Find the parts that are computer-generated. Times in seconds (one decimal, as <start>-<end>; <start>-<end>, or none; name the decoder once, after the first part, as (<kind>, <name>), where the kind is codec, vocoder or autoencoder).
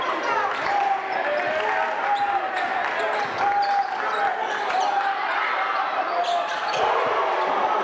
none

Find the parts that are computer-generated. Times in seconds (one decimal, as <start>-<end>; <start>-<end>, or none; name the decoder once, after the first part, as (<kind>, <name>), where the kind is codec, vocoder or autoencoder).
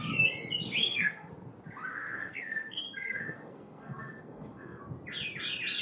0.8-1.3 (codec, SNAC); 1.9-4.8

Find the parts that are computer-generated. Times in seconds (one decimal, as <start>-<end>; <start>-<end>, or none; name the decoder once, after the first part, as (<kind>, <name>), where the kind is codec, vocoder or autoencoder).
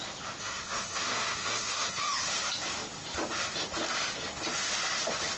0.4-2.0 (codec, SNAC)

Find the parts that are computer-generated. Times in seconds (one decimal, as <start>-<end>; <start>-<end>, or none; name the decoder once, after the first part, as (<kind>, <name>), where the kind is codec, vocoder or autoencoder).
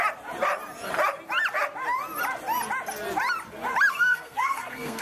3.9-5.0 (codec, SNAC)